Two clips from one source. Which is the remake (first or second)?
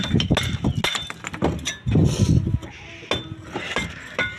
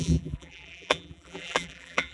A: second